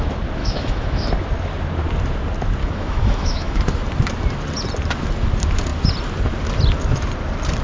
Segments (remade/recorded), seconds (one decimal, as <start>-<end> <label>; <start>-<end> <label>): 0.0-0.4 recorded; 0.4-1.1 remade; 1.1-2.6 recorded; 2.6-3.6 remade; 3.6-7.6 recorded